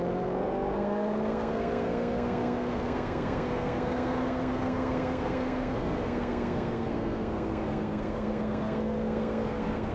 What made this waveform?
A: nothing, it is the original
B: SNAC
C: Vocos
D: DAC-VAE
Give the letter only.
B